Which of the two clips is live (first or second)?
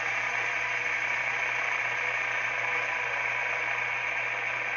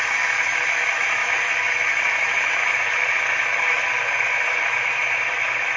first